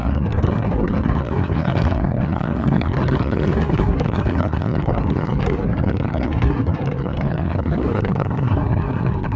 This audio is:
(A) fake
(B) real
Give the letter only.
A